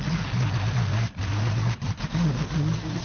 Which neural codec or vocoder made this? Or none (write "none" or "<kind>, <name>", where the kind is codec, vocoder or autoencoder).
none